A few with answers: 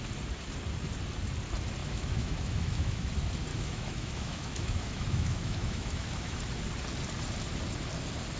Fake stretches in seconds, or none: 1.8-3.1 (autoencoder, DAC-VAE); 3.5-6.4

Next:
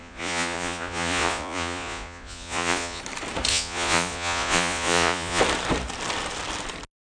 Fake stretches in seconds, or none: 0.0-3.0 (vocoder, Vocos); 3.5-5.4

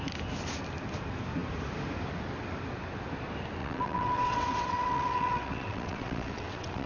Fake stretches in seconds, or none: 3.6-6.9 (vocoder, WaveNeXt)